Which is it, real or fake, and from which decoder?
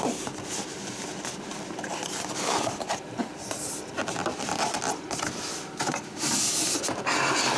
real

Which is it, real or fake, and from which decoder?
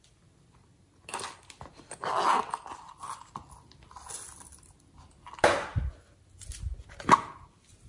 real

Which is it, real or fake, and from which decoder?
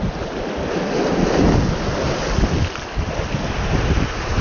real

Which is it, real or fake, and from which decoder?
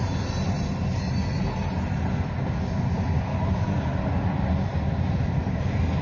real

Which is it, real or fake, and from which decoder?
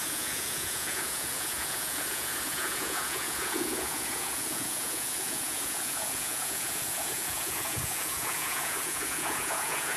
fake, vocoder, Vocos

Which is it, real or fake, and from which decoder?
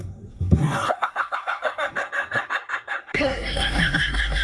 fake, codec, SNAC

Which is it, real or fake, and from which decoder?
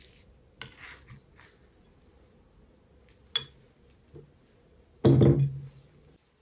real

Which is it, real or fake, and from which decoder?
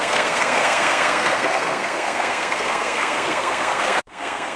fake, codec, SNAC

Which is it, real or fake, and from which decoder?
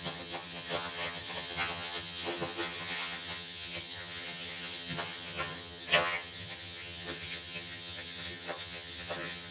fake, vocoder, HiFi-GAN